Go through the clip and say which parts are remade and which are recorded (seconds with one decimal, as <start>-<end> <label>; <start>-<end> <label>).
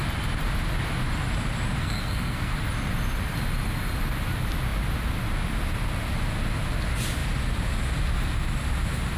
0.0-1.8 recorded; 1.8-2.5 remade; 2.5-9.2 recorded